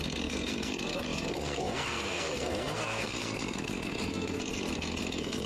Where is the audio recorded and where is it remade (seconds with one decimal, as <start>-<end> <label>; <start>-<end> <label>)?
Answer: 0.0-5.5 remade